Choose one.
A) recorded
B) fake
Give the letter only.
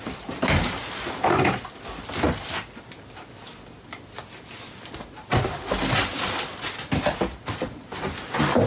A